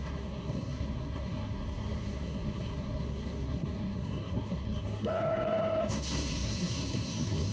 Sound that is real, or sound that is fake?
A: fake